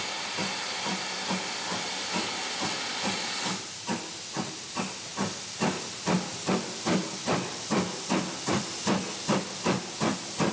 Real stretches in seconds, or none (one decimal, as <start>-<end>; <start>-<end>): 0.0-10.5